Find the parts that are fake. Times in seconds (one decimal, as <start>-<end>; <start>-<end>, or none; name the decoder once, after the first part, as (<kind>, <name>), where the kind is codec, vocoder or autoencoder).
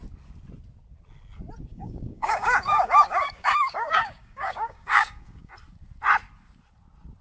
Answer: 1.7-5.5 (codec, DAC)